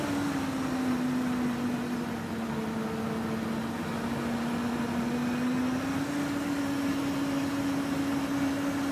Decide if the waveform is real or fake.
real